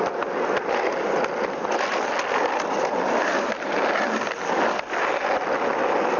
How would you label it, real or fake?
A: real